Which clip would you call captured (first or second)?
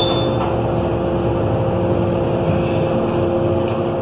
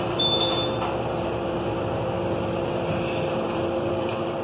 first